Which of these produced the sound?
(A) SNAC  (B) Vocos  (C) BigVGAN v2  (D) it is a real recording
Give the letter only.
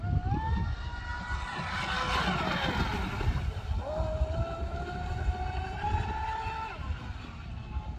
D